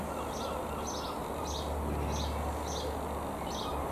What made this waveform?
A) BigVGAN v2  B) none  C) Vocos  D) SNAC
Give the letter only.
B